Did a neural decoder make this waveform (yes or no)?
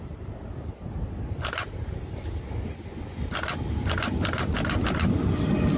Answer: no